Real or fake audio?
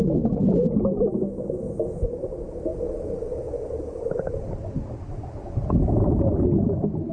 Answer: real